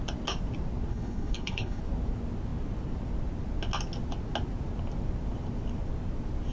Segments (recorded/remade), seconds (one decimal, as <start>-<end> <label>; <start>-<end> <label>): 0.0-0.9 recorded; 0.9-1.8 remade; 1.8-6.5 recorded